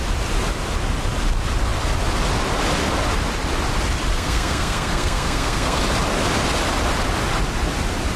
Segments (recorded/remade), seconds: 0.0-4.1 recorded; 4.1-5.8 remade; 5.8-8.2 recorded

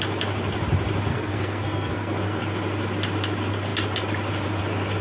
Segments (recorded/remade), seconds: 0.0-1.1 recorded; 1.1-2.4 remade; 2.4-5.0 recorded

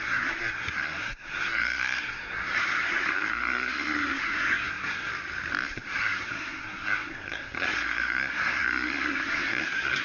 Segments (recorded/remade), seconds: 0.0-5.1 remade; 5.1-5.7 recorded; 5.7-10.0 remade